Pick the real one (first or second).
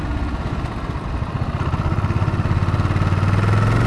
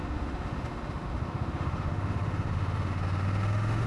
first